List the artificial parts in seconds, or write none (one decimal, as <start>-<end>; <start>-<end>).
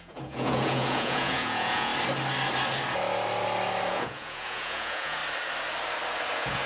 0.0-1.9; 3.9-5.2; 6.3-6.7